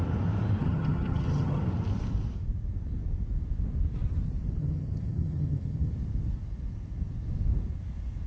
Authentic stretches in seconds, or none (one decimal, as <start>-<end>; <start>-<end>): 0.0-0.6; 1.6-4.6; 5.9-8.3